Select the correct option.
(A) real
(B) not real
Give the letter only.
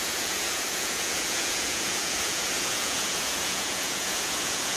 B